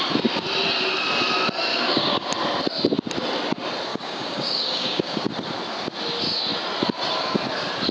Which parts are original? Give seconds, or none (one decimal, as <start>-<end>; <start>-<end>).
0.0-1.7; 2.3-3.9; 5.3-7.9